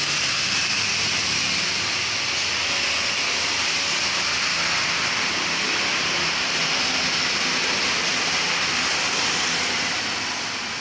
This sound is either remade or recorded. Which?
recorded